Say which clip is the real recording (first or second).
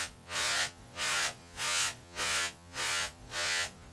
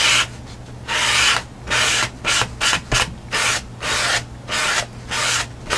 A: second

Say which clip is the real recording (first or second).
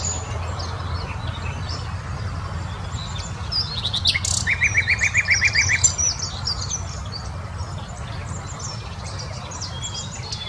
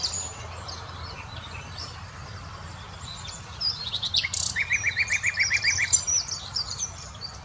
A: first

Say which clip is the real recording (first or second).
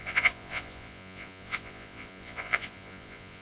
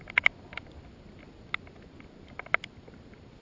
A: second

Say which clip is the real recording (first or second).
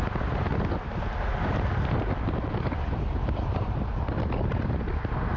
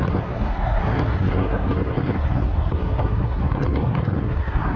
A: first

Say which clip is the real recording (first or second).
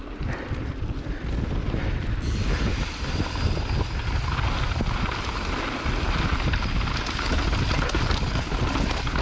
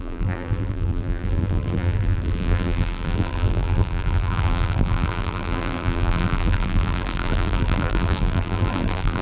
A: first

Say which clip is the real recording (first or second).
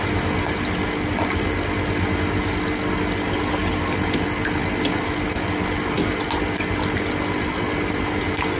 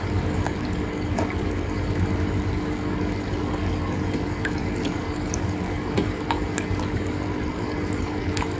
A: first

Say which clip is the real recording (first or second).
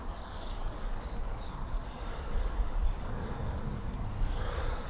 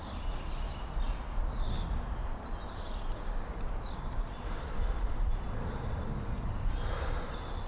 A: second